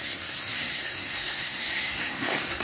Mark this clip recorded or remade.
remade